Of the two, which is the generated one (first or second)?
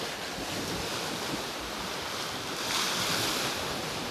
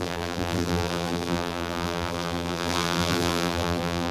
second